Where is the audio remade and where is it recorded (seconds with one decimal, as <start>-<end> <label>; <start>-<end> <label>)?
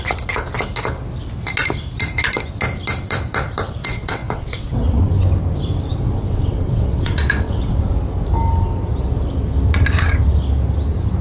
0.0-3.8 recorded; 3.8-5.1 remade; 5.1-5.9 recorded; 5.9-7.9 remade; 7.9-11.2 recorded